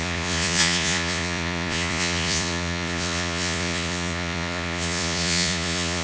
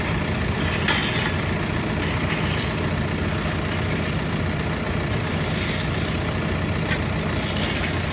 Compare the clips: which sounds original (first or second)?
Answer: second